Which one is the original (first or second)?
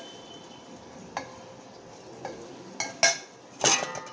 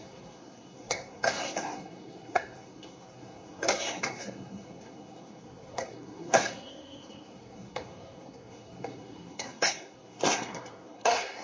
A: first